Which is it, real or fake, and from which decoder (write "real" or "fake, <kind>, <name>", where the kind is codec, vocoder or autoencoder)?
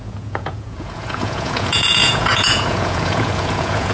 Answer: fake, vocoder, Vocos